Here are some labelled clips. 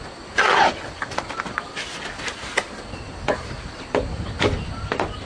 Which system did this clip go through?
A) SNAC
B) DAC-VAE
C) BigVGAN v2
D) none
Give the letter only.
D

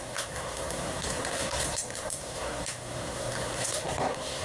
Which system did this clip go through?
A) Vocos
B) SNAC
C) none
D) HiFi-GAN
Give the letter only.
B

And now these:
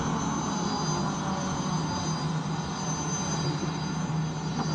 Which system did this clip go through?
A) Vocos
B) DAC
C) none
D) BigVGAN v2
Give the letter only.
C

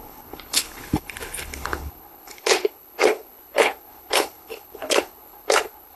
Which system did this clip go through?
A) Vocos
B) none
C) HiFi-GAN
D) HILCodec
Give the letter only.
D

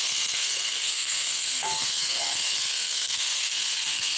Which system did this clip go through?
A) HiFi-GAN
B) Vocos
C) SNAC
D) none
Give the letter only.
C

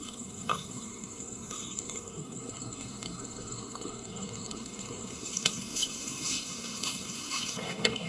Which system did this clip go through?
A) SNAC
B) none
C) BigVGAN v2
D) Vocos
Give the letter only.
A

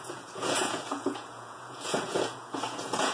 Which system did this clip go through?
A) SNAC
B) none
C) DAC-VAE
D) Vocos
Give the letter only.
D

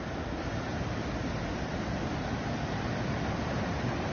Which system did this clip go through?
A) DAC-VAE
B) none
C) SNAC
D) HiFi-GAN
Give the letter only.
B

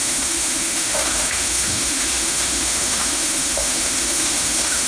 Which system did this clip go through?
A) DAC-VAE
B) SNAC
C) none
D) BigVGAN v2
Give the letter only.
A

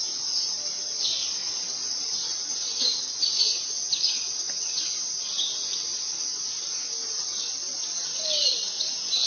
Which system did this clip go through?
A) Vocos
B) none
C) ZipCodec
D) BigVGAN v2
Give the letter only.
D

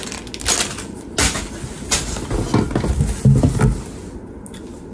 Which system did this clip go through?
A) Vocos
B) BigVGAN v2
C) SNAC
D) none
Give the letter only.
D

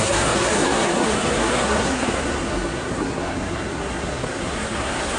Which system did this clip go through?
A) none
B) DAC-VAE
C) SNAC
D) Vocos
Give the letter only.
C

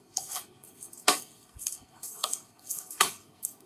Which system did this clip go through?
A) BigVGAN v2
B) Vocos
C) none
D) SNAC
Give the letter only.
D